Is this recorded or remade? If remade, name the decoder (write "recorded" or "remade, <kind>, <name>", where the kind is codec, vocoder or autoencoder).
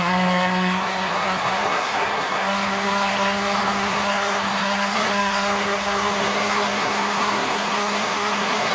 remade, codec, SNAC